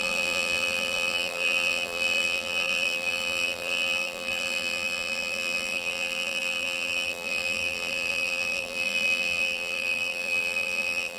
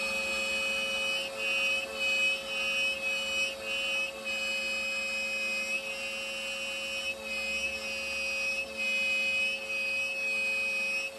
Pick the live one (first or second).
second